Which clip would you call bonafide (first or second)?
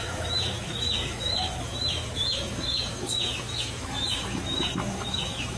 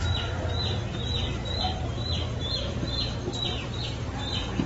second